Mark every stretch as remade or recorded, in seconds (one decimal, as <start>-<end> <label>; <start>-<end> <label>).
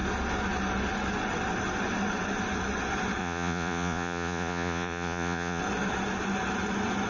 0.0-3.2 recorded; 3.2-5.6 remade; 5.6-7.1 recorded